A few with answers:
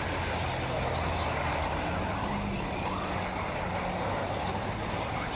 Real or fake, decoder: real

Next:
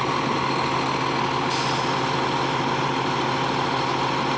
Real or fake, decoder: real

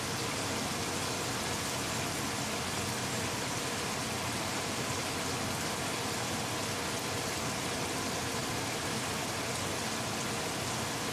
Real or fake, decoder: real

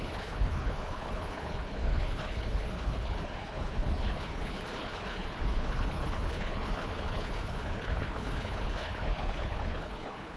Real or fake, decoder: fake, codec, HILCodec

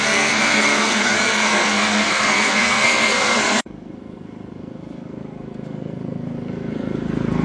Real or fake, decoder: fake, codec, SNAC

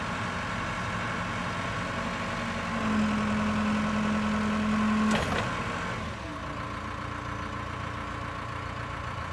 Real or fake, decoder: real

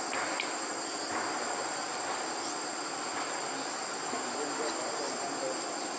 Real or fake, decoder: real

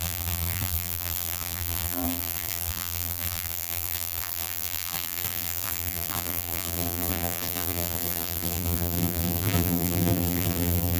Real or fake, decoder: fake, vocoder, BigVGAN v2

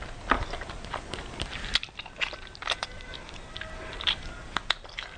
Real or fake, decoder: real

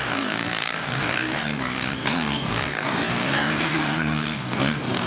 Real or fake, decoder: fake, codec, DAC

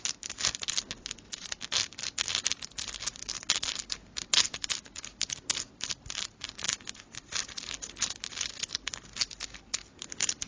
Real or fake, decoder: real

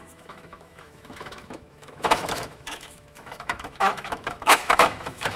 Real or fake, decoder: fake, autoencoder, DAC-VAE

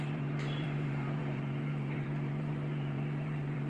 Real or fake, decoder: fake, vocoder, BigVGAN v2